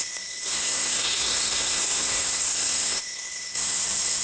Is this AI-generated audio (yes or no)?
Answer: yes